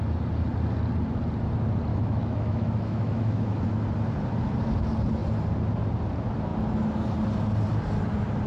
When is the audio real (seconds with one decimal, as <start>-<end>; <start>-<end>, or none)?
0.0-1.9; 3.6-8.5